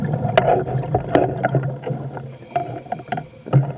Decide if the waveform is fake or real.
real